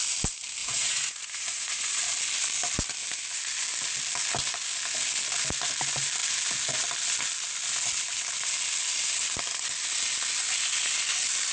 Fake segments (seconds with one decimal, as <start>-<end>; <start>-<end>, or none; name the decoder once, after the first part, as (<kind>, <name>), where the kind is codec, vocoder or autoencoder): 0.6-2.0 (vocoder, Vocos)